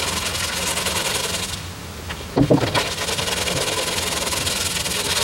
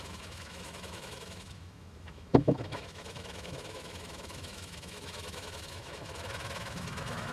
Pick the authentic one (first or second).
first